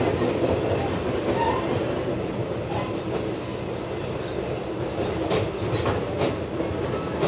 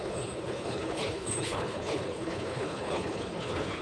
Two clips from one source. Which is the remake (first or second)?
second